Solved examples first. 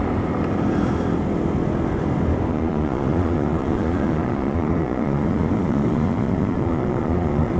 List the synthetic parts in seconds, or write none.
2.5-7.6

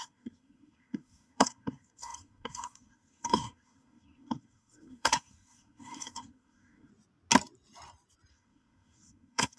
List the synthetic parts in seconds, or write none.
0.0-6.9; 8.3-9.6

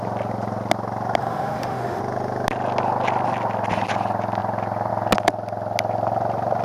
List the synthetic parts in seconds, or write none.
1.2-2.0